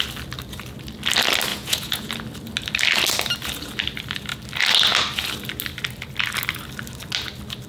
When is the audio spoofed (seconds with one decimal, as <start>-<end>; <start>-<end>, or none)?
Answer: 1.5-2.1